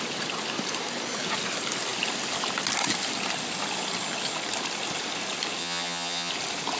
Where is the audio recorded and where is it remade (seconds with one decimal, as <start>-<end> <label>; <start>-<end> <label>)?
0.0-5.6 recorded; 5.6-6.3 remade; 6.3-6.8 recorded